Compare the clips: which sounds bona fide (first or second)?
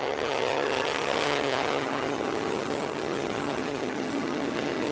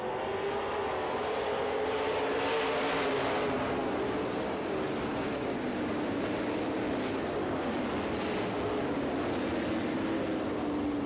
second